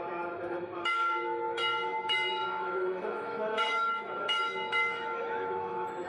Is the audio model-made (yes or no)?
yes